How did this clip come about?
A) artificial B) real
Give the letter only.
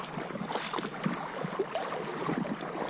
B